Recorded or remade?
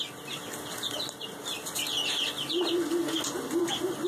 recorded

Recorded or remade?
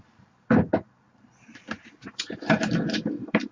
recorded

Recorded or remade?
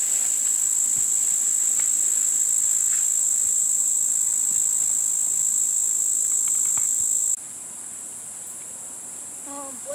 recorded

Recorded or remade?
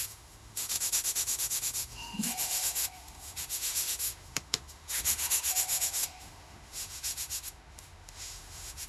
remade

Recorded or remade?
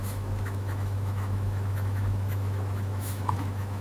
remade